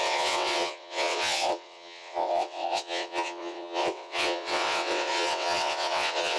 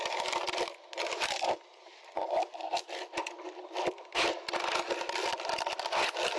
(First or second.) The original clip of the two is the second